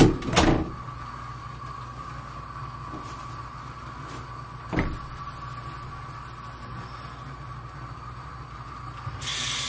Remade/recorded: recorded